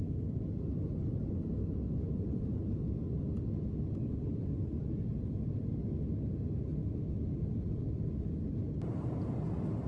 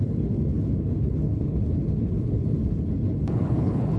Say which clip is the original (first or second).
first